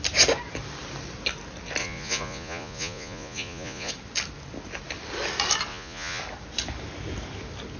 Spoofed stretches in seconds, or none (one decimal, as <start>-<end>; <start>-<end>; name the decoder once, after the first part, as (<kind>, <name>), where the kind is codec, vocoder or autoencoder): 1.8-3.9 (vocoder, Vocos); 5.7-6.2